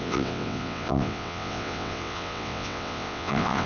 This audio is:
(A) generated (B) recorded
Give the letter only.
A